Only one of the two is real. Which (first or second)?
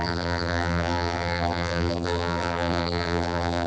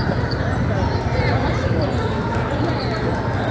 second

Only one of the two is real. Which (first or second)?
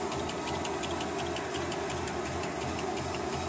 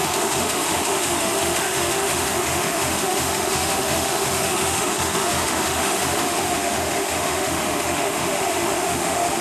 first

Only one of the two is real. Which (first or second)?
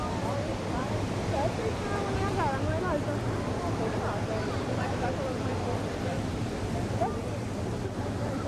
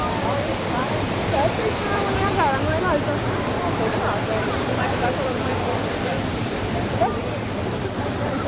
first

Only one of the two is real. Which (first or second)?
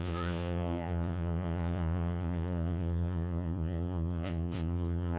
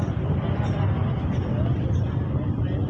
second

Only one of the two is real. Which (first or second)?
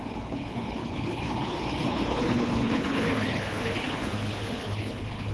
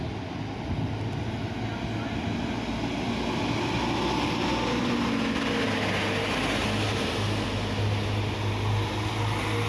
second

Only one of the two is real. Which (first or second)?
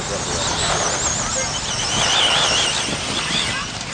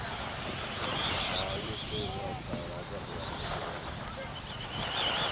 first